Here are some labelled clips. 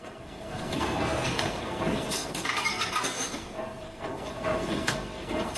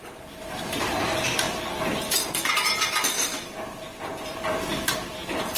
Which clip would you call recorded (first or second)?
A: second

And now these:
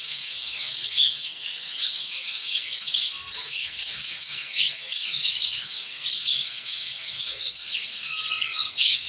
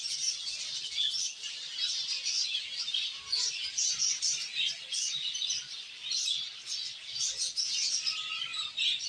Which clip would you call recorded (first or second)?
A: second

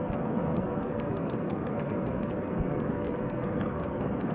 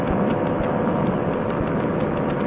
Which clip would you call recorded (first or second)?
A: second